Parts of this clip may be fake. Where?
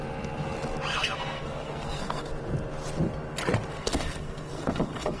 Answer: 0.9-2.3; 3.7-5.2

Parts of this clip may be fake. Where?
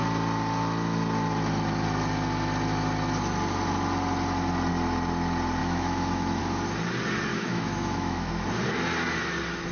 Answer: 5.6-6.4; 7.3-8.3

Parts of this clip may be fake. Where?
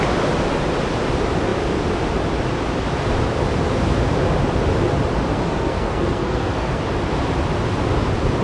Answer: 5.3-6.8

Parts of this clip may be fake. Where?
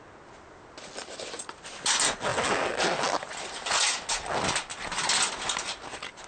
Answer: 2.3-3.5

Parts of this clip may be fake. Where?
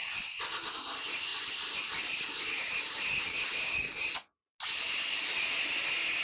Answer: none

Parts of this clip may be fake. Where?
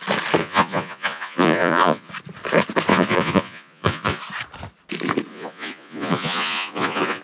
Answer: 0.4-2.1; 2.9-4.2; 5.3-7.2